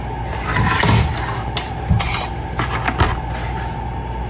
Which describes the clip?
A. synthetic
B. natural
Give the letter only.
B